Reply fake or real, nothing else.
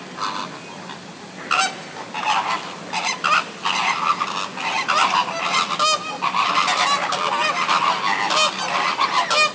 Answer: real